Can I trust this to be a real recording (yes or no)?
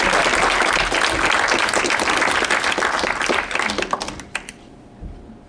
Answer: yes